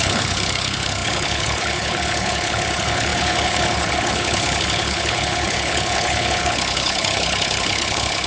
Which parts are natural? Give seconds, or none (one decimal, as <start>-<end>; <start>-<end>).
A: none